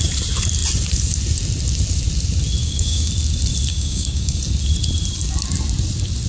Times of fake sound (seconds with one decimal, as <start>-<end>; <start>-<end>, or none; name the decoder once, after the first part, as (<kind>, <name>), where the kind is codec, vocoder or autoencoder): 2.6-3.1 (codec, DAC); 3.7-4.4